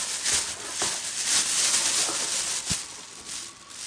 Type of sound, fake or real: real